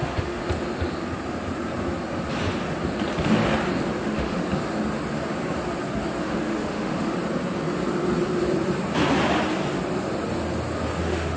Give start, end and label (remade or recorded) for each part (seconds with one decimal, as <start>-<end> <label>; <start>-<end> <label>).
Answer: 0.0-0.4 remade; 0.4-4.0 recorded; 4.0-4.4 remade; 4.4-6.2 recorded; 6.2-7.2 remade; 7.2-11.0 recorded; 11.0-11.4 remade